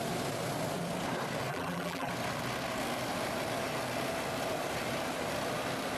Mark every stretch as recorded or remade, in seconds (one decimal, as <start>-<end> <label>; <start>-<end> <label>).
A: 0.0-1.5 recorded; 1.5-2.1 remade; 2.1-6.0 recorded